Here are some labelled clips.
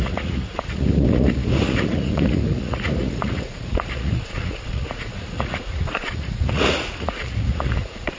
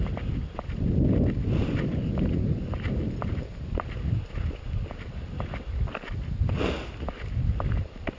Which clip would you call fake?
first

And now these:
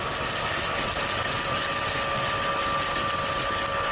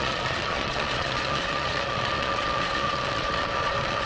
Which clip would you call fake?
second